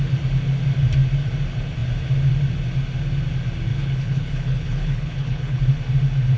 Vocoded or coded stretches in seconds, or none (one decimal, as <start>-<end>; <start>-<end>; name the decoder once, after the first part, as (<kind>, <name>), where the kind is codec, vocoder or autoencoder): 3.7-5.6 (codec, HILCodec)